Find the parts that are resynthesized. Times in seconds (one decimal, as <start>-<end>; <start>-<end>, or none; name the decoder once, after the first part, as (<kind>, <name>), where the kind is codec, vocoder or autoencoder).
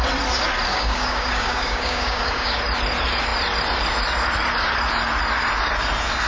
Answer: 0.7-2.6 (codec, DAC)